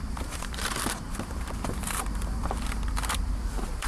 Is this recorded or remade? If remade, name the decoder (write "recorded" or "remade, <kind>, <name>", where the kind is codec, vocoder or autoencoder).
remade, vocoder, BigVGAN v2